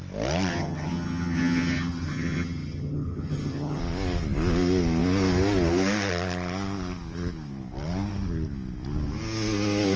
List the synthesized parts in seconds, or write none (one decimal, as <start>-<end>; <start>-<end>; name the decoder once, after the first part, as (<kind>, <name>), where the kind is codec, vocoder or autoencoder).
0.5-3.8 (vocoder, HiFi-GAN)